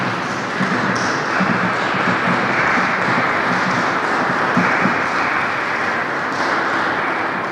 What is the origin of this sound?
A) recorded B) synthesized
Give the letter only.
A